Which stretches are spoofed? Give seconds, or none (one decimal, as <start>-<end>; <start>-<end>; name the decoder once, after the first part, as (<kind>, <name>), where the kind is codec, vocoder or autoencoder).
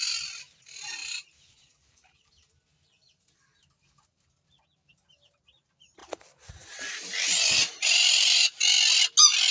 1.0-2.3 (vocoder, BigVGAN v2); 6.0-8.6